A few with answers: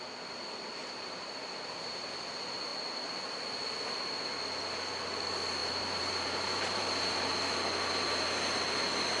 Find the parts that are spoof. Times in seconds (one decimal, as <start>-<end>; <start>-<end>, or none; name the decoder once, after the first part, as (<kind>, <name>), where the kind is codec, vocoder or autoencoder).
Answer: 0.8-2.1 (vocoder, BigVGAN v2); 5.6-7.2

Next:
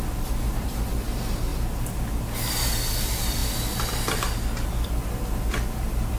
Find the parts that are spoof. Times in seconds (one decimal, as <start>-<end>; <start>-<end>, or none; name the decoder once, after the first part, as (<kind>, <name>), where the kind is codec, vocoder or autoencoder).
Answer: 0.0-1.5 (vocoder, BigVGAN v2); 3.0-3.4; 4.1-6.2

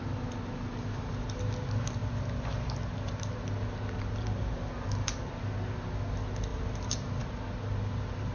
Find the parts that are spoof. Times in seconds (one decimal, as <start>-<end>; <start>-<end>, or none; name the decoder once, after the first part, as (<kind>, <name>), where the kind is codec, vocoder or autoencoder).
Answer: 6.5-7.2 (vocoder, BigVGAN v2)

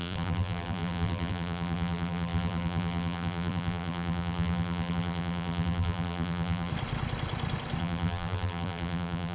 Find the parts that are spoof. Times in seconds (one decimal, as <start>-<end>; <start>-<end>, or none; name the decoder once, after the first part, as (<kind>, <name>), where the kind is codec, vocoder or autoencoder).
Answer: 0.0-6.7 (vocoder, BigVGAN v2); 7.8-9.3

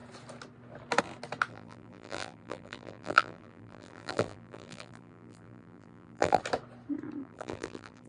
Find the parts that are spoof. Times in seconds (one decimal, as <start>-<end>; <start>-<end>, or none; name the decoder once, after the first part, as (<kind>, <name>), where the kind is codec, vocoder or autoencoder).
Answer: 1.5-6.4 (vocoder, BigVGAN v2); 7.2-8.1

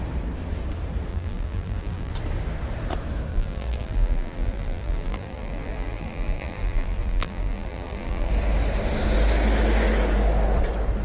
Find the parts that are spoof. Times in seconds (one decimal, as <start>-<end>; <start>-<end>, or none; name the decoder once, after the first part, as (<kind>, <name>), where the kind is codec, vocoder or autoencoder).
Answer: 1.1-2.1 (vocoder, BigVGAN v2); 3.3-8.3

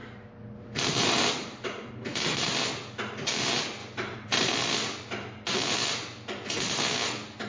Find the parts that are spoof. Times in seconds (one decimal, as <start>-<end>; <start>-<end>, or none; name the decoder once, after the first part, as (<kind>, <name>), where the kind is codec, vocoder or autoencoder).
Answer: 0.0-1.9 (vocoder, BigVGAN v2); 3.8-4.5